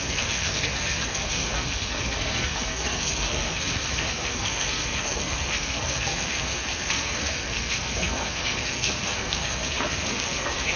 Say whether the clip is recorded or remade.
remade